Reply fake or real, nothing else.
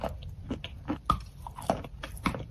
real